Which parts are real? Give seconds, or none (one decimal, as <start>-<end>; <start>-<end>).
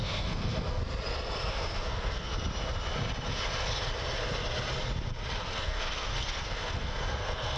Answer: 0.8-1.5; 2.3-5.4